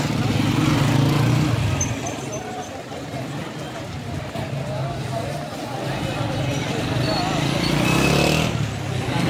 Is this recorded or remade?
recorded